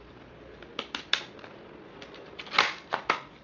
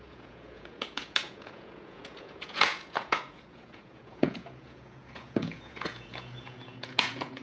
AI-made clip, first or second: second